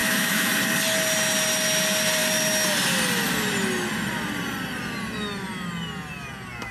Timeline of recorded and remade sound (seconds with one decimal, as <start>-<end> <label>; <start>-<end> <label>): 0.0-0.5 remade; 0.5-6.7 recorded